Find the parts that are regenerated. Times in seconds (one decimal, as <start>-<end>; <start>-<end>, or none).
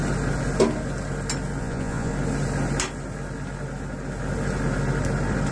1.6-2.1